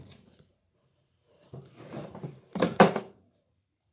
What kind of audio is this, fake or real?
fake